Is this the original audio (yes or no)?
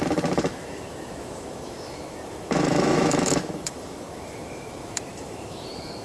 no